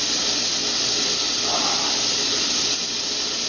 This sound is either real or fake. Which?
real